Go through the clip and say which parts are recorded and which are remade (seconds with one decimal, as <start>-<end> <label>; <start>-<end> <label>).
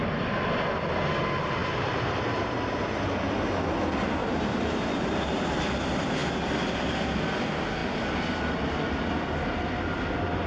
0.0-1.6 recorded; 1.6-3.1 remade; 3.1-4.2 recorded; 4.2-5.2 remade; 5.2-10.5 recorded